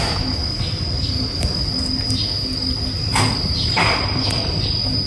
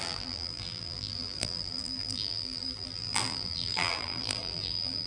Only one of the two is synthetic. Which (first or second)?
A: second